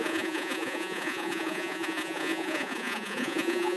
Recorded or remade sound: remade